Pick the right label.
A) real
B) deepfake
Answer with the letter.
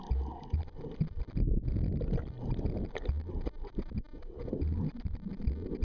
A